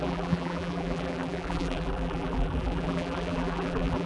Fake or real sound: fake